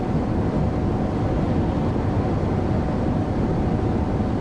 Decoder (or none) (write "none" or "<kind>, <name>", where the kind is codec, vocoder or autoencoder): none